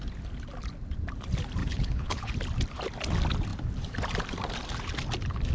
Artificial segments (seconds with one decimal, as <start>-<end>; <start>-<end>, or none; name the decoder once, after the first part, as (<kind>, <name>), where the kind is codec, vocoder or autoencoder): 1.6-2.3 (codec, HILCodec)